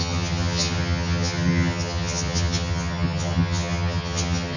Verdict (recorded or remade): remade